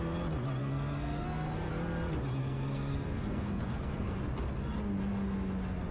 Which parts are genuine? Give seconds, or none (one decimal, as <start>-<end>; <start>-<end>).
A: 0.0-0.6; 1.7-2.4; 4.2-5.9